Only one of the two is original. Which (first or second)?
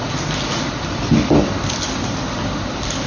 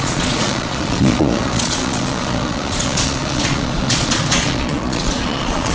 first